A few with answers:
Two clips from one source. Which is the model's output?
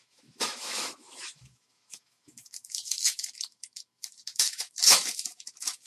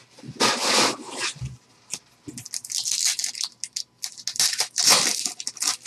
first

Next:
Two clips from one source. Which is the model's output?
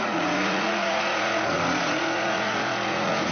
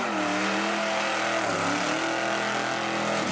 first